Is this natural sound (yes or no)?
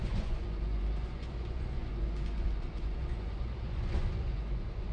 no